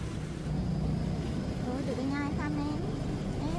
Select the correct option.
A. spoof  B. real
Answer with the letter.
B